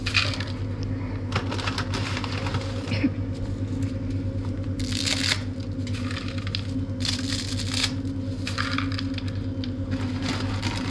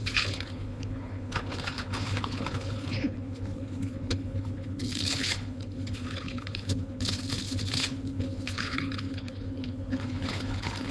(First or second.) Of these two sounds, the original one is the first